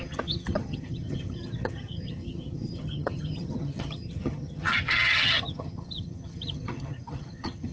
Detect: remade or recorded remade